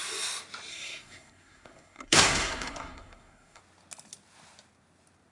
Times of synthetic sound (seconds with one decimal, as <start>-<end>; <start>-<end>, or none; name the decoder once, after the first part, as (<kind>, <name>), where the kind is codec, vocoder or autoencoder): 0.7-3.6 (codec, SNAC)